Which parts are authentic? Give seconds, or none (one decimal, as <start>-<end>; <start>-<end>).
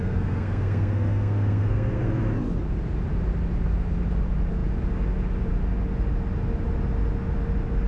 2.1-7.9